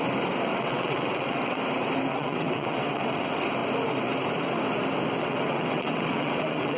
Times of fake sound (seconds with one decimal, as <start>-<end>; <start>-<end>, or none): 0.5-1.6; 2.1-3.2; 5.2-6.8

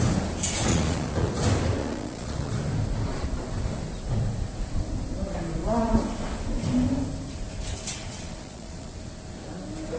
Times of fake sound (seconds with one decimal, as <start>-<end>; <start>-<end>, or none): 0.7-1.3; 1.8-2.5; 8.0-8.9

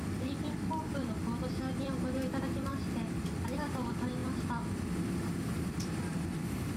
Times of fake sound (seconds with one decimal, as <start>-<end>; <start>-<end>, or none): 0.0-6.8

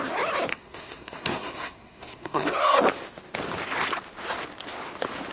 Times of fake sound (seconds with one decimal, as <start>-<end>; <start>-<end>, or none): 0.5-2.8